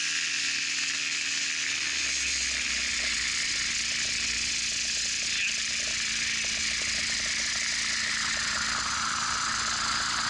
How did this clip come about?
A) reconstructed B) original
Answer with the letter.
B